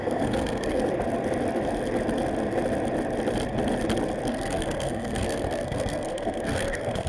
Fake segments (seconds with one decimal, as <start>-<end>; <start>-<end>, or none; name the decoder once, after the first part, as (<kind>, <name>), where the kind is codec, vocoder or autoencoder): 0.0-0.8 (codec, SNAC); 4.3-7.1